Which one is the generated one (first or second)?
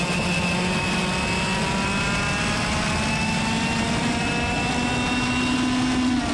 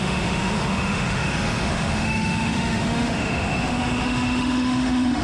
second